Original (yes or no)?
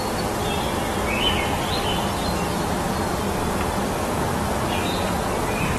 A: yes